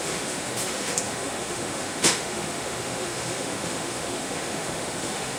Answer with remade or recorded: remade